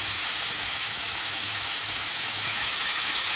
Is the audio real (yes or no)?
no